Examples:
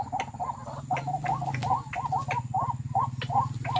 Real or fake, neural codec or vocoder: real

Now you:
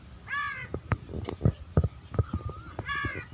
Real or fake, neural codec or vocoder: real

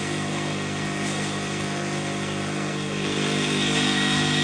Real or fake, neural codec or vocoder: fake, codec, SNAC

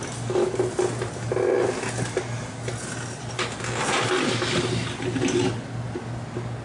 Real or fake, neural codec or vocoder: real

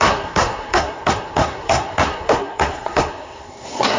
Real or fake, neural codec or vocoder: fake, codec, SNAC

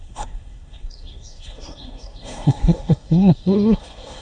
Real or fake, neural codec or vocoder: fake, codec, SNAC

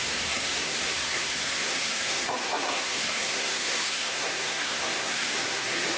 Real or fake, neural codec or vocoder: fake, codec, SNAC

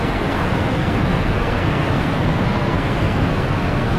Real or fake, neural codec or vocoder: fake, codec, SNAC